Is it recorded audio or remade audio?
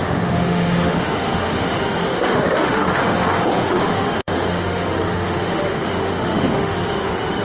remade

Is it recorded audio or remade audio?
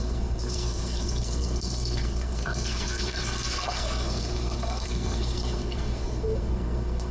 remade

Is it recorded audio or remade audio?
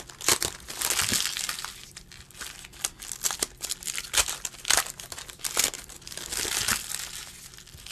recorded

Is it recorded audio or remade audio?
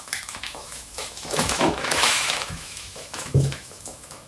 remade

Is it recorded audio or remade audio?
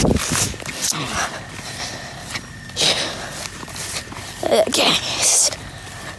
recorded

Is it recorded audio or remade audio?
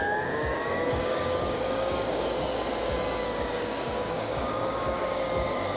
remade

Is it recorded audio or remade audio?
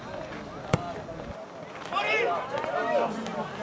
recorded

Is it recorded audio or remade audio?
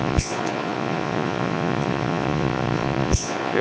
remade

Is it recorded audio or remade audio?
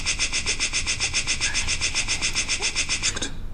recorded